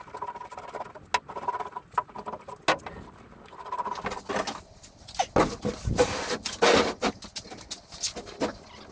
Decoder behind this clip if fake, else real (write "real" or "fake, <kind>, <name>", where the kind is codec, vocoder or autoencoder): real